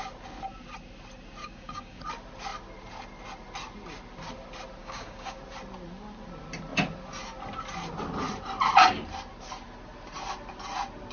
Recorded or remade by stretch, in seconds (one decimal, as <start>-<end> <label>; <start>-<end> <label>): 0.0-1.4 recorded; 1.4-2.0 remade; 2.0-4.8 recorded; 4.8-5.4 remade; 5.4-11.1 recorded

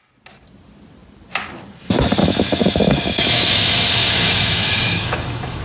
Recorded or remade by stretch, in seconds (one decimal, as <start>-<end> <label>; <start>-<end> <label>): 0.0-2.2 recorded; 2.2-5.6 remade